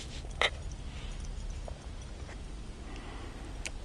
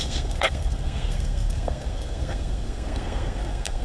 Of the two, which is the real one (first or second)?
first